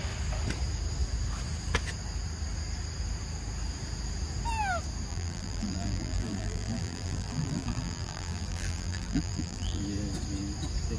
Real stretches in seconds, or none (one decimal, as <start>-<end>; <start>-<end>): 0.0-5.1; 9.8-11.0

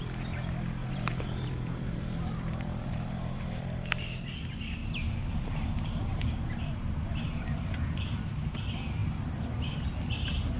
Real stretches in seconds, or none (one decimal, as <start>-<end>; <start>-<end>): 0.0-0.8; 4.3-4.8; 8.6-10.6

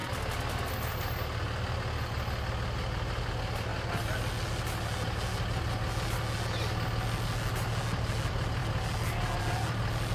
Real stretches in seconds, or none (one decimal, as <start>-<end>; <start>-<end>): 0.0-10.1

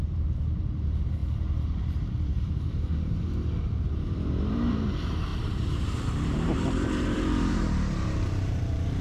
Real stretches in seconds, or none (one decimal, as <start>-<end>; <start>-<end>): 1.2-1.9